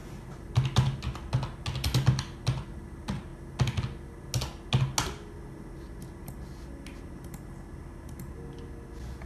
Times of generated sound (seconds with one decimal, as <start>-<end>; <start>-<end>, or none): 0.0-0.5